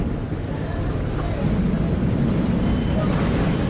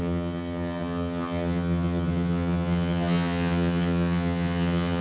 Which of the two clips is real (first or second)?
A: first